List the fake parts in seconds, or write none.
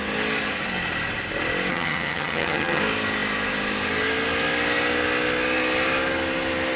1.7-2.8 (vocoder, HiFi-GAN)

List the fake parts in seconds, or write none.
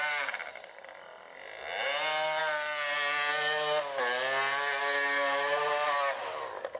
none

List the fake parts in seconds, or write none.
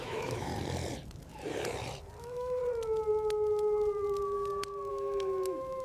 0.0-0.5 (autoencoder, DAC-VAE); 2.2-2.6; 4.9-5.8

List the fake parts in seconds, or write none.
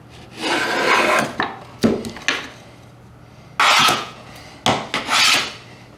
3.8-4.4 (vocoder, Vocos)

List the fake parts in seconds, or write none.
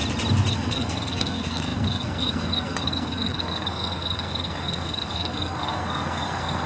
0.5-6.7 (codec, SNAC)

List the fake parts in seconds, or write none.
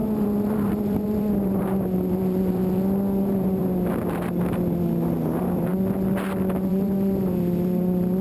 0.0-2.6 (vocoder, BigVGAN v2); 3.2-3.6; 5.3-5.7; 6.7-8.2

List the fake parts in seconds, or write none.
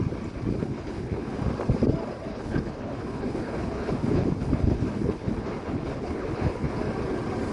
0.5-1.4 (codec, HILCodec); 2.3-6.8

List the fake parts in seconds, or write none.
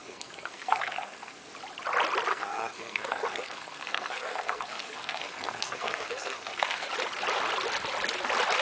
0.0-1.5 (codec, SNAC); 2.3-6.9